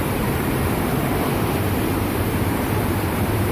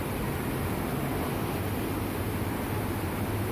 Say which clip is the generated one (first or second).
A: first